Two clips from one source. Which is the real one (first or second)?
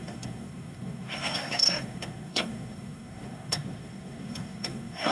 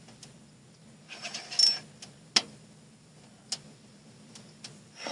second